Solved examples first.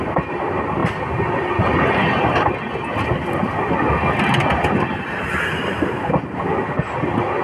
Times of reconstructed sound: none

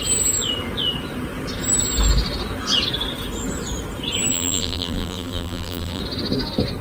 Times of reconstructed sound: 4.3-6.0 (vocoder, BigVGAN v2)

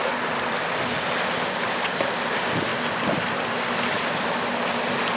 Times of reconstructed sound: none

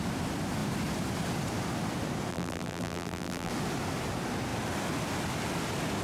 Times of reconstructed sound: 2.3-3.5 (vocoder, BigVGAN v2)

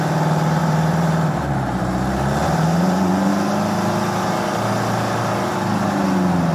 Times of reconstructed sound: 0.6-3.3 (vocoder, BigVGAN v2)

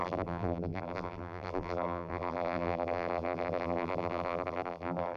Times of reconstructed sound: 0.0-5.2 (vocoder, BigVGAN v2)

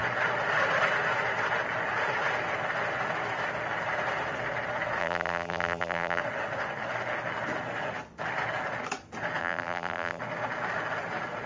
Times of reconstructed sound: 5.0-6.2 (vocoder, BigVGAN v2); 9.4-10.2